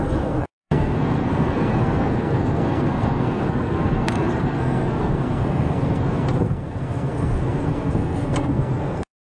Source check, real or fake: fake